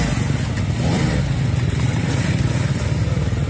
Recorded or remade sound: recorded